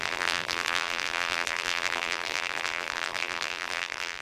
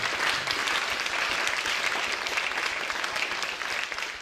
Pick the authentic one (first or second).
second